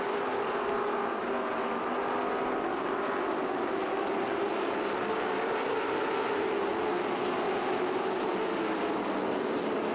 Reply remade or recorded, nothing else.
recorded